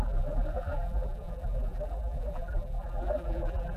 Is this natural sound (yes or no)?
no